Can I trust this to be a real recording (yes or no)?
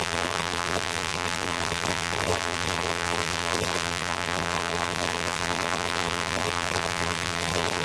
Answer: no